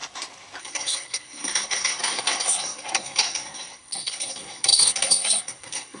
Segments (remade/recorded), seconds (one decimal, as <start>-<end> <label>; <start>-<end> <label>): 0.0-0.6 recorded; 0.6-6.0 remade